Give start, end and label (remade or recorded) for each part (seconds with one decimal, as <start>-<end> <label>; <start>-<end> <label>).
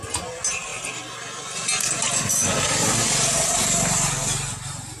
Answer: 0.0-5.0 recorded